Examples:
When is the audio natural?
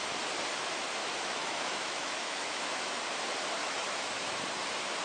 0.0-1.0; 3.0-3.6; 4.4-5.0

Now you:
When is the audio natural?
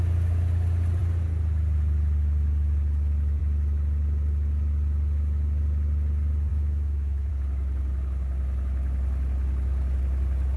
0.0-6.5; 7.3-10.6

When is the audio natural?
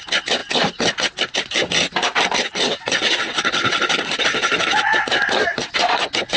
0.0-6.4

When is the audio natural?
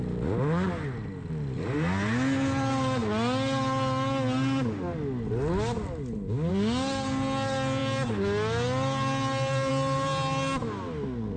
0.0-11.4